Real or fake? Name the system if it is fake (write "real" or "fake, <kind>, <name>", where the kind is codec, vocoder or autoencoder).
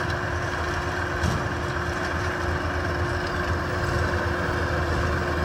real